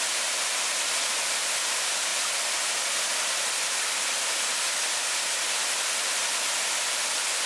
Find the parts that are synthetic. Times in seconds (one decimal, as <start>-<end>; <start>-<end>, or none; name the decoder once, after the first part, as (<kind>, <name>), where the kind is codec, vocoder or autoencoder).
none